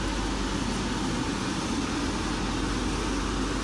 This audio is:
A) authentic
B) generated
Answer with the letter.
A